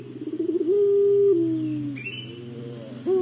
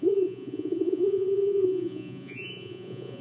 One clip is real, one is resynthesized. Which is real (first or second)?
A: first